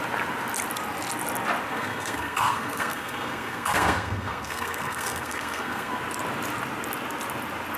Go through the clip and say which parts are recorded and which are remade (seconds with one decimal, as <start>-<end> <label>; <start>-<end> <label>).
0.0-1.7 recorded; 1.7-6.0 remade; 6.0-7.8 recorded